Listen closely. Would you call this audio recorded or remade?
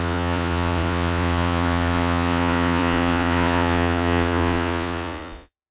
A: remade